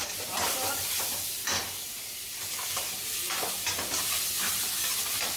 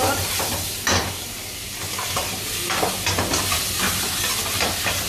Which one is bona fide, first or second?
second